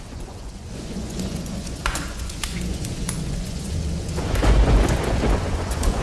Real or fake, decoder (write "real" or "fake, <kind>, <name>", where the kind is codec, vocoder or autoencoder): fake, vocoder, Vocos